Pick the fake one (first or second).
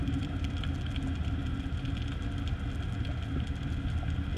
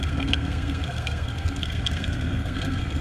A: second